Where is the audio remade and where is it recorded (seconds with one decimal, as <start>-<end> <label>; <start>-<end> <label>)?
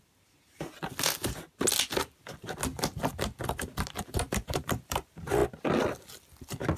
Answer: 0.0-0.7 remade; 0.7-4.0 recorded; 4.0-5.4 remade; 5.4-6.8 recorded